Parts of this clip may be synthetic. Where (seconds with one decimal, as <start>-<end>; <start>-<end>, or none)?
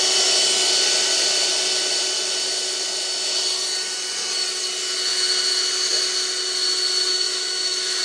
7.1-8.0